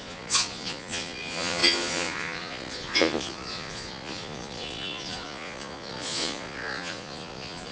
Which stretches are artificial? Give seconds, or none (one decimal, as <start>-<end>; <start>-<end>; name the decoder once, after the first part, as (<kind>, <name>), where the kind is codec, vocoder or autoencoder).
0.0-7.7 (vocoder, Vocos)